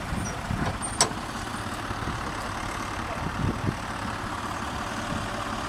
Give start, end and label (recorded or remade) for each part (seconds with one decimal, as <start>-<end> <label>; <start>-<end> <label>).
0.0-5.7 recorded